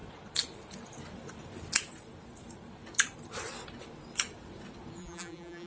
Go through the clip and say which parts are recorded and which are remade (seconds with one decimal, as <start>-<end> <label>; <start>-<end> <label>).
0.0-5.0 recorded; 5.0-5.7 remade